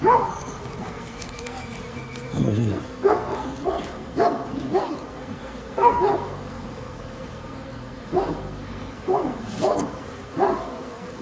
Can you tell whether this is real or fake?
fake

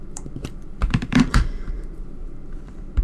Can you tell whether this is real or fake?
fake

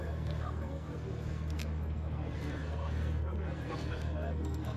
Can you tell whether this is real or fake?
fake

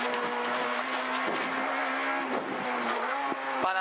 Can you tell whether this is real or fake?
real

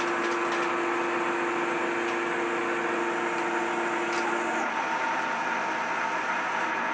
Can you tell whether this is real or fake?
real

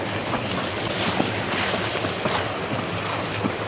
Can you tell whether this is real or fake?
real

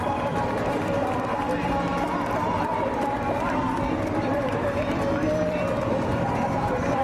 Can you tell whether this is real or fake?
fake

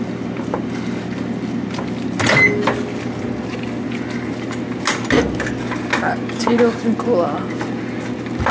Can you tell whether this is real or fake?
real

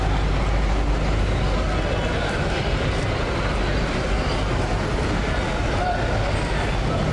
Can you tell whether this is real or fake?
real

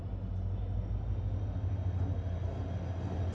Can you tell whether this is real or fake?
real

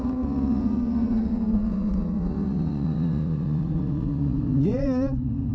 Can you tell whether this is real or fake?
fake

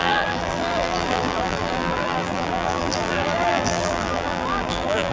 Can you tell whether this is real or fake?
fake